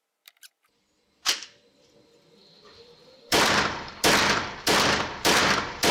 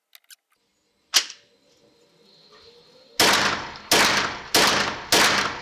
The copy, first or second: first